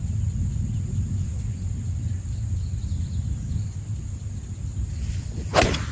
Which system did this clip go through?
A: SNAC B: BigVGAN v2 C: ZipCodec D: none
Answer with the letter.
D